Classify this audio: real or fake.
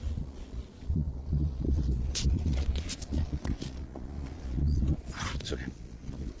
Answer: fake